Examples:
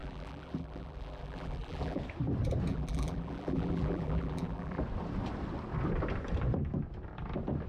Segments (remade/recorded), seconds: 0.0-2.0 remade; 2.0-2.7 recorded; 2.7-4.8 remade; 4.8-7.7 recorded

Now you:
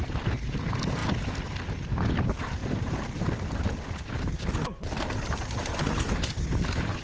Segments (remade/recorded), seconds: 0.0-2.6 recorded; 2.6-4.1 remade; 4.1-7.0 recorded

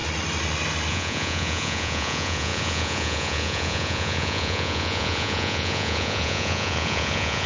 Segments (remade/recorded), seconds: 0.0-0.9 recorded; 0.9-7.5 remade

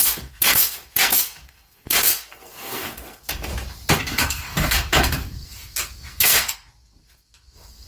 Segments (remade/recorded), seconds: 0.0-3.5 remade; 3.5-4.0 recorded; 4.0-7.9 remade

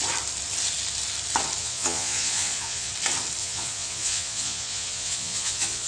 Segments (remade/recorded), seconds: 0.0-1.6 recorded; 1.6-2.9 remade; 2.9-3.4 recorded; 3.4-5.9 remade

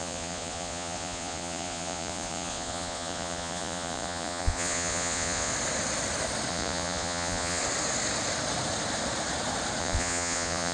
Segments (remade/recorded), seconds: 0.0-5.5 remade; 5.5-6.5 recorded; 6.5-7.6 remade; 7.6-9.8 recorded; 9.8-10.7 remade